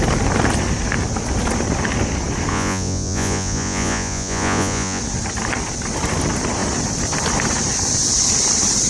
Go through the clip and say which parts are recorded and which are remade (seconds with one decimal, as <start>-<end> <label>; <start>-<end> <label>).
0.0-2.5 recorded; 2.5-5.0 remade; 5.0-8.9 recorded